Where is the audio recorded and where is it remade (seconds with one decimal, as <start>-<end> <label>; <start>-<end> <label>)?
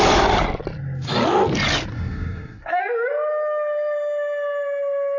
0.0-1.9 recorded; 1.9-2.8 remade; 2.8-5.2 recorded